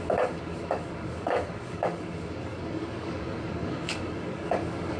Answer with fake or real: fake